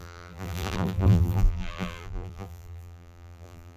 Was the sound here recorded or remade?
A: remade